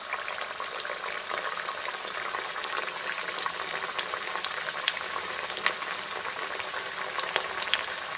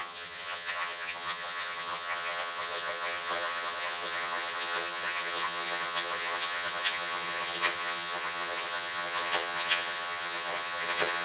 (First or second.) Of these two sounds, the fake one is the second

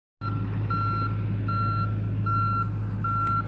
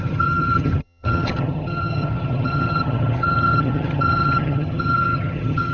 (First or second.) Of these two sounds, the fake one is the second